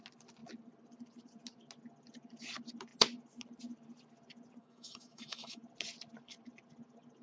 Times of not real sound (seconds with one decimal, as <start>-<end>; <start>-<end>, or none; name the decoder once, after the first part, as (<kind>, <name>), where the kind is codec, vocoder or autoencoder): 4.6-5.6 (autoencoder, DAC-VAE)